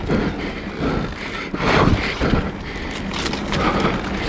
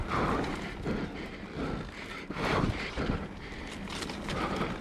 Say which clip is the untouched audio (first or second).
first